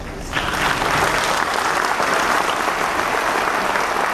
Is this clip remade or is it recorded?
recorded